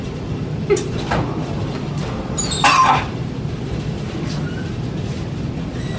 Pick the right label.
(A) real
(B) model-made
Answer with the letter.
A